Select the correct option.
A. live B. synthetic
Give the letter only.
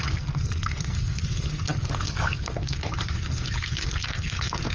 B